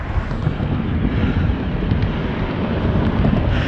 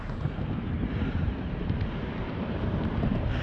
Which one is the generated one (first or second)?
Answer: second